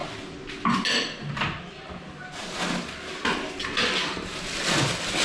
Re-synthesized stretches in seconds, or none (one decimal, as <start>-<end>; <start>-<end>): none